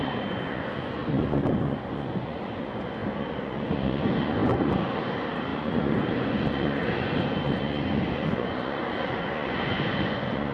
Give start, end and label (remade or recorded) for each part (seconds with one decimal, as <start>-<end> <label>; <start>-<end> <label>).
0.0-10.5 remade